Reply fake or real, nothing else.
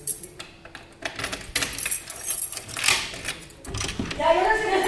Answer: real